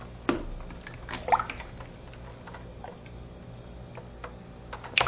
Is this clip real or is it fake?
real